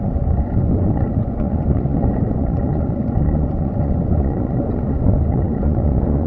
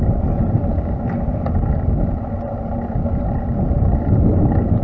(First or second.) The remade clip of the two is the first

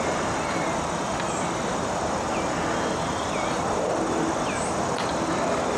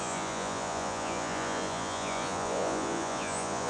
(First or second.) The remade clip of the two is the second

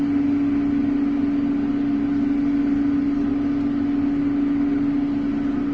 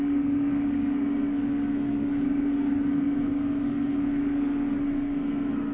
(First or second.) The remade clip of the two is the second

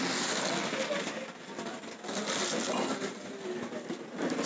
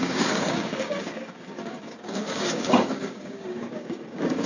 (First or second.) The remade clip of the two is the second